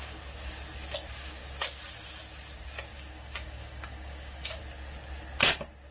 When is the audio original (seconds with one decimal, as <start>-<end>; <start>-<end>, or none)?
0.0-2.9; 4.6-5.9